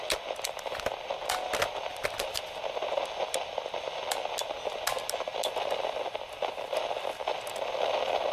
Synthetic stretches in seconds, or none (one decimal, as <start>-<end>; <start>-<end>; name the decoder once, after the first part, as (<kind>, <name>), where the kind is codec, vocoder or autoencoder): none